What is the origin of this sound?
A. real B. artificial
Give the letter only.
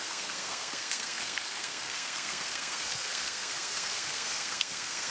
B